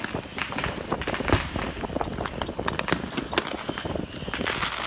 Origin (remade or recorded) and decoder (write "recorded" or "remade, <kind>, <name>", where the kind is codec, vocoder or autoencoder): recorded